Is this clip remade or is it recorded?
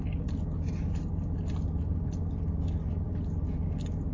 recorded